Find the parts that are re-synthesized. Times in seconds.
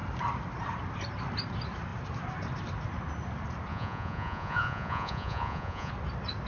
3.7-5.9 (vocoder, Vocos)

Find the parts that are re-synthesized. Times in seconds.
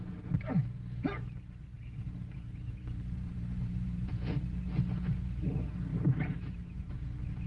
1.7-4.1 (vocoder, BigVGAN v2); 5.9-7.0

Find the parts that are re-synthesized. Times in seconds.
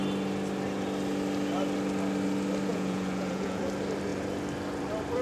2.7-3.6 (vocoder, Vocos)